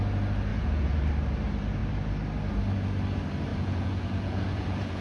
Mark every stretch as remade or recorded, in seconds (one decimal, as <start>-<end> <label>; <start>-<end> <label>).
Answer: 0.0-0.5 recorded; 0.5-1.1 remade; 1.1-3.5 recorded; 3.5-5.0 remade